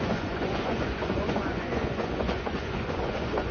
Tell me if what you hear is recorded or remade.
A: remade